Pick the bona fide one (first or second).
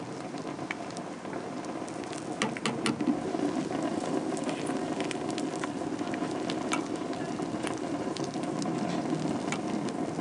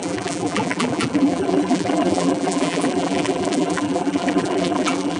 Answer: first